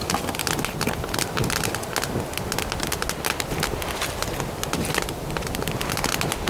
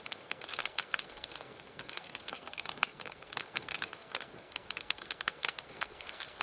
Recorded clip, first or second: first